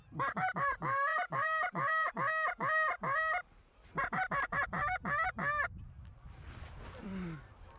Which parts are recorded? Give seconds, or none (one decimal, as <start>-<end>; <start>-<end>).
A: 0.0-1.1; 2.1-3.9; 4.6-7.8